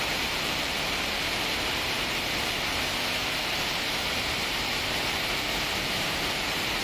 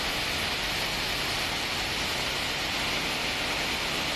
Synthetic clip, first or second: first